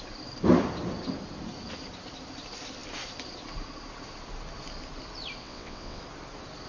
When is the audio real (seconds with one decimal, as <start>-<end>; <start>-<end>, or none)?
0.0-5.4; 6.0-6.7